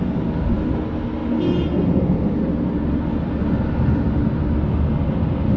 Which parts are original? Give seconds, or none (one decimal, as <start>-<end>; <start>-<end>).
0.0-5.6